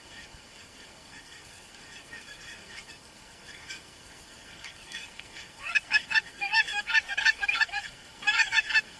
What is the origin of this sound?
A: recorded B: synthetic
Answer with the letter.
B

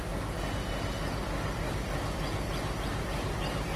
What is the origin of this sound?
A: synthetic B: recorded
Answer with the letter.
B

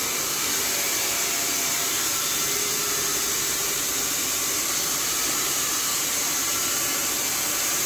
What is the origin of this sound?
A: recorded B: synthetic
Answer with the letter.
B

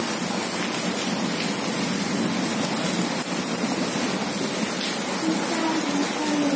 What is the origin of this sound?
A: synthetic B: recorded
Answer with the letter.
B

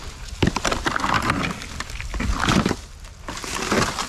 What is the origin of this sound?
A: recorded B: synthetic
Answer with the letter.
A